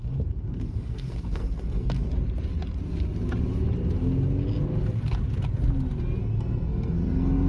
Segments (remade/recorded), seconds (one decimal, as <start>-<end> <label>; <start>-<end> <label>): 0.0-2.1 remade; 2.1-6.2 recorded; 6.2-7.5 remade